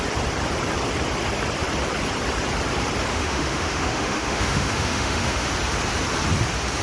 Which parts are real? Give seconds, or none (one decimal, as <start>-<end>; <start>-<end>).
0.0-3.1; 5.5-6.8